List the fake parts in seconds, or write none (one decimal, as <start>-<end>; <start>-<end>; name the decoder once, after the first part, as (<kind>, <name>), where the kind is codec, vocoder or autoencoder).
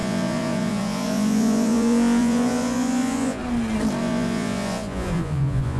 0.0-3.4 (vocoder, Vocos); 4.0-5.8